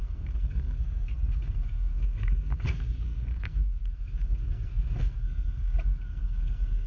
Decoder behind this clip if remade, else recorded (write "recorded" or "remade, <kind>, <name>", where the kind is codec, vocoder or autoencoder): remade, codec, SNAC